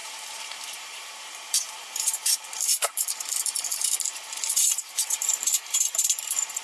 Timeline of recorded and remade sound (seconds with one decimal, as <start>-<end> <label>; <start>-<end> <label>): 0.0-6.6 remade